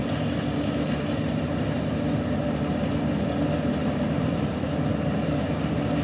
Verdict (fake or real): real